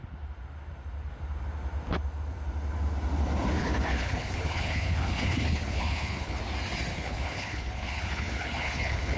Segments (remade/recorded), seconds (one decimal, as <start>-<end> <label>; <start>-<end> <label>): 0.0-3.6 recorded; 3.6-6.4 remade; 6.4-6.9 recorded; 6.9-9.2 remade